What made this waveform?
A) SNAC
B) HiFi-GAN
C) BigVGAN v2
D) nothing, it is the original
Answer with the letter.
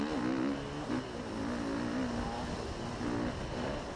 D